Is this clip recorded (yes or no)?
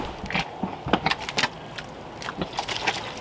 yes